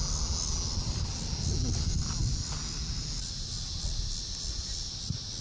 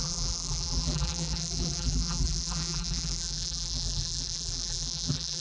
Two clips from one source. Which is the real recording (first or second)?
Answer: first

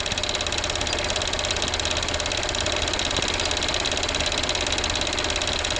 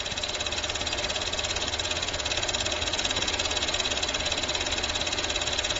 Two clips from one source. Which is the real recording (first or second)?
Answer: first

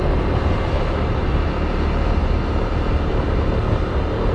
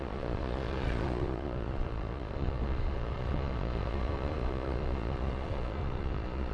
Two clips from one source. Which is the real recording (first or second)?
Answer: first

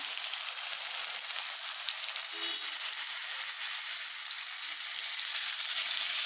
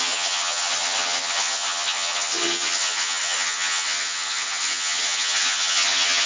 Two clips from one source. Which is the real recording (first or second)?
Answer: first